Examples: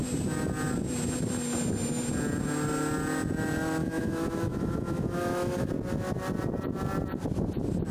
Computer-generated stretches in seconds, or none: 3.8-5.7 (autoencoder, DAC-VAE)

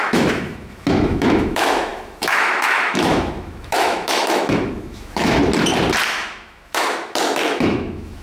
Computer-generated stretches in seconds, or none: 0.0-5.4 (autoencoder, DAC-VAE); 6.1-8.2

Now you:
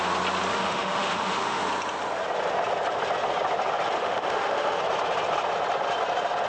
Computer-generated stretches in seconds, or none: 0.5-1.6 (autoencoder, DAC-VAE); 4.0-4.8